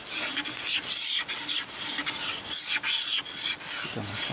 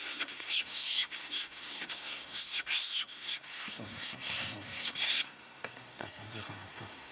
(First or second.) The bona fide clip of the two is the first